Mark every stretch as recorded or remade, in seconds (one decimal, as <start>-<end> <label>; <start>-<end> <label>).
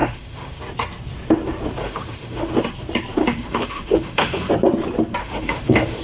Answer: 0.0-0.6 remade; 0.6-1.8 recorded; 1.8-2.5 remade; 2.5-3.2 recorded; 3.2-4.5 remade; 4.5-5.2 recorded; 5.2-6.0 remade